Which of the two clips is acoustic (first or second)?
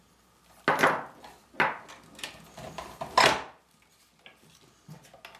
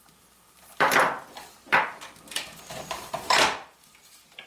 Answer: first